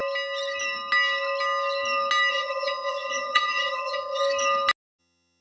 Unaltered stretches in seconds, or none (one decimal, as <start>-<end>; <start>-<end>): 0.0-2.3; 4.2-5.0